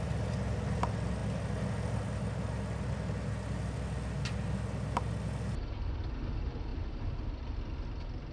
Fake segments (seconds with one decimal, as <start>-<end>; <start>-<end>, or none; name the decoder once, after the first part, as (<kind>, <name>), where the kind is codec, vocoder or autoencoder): none